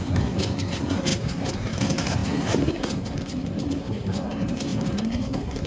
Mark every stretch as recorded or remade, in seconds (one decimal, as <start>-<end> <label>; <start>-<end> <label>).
0.0-5.7 remade